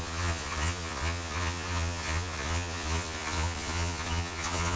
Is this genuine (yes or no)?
no